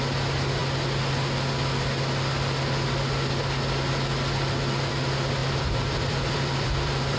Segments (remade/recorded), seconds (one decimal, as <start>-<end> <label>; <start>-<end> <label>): 0.0-5.4 recorded; 5.4-7.2 remade